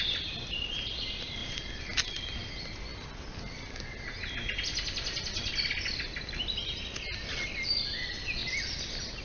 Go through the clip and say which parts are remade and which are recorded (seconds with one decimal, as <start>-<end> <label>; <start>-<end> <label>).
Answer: 0.0-9.2 recorded